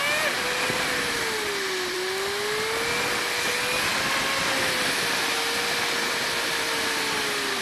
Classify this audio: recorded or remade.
recorded